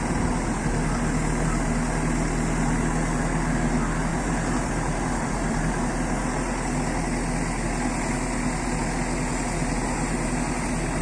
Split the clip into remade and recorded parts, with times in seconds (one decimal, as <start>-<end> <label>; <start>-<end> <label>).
0.0-4.1 recorded; 4.1-5.9 remade; 5.9-11.0 recorded